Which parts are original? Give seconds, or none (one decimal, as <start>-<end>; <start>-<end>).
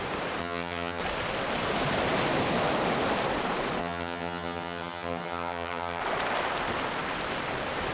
0.0-0.4; 1.0-3.8; 6.0-7.9